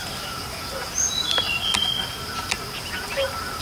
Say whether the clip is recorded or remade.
recorded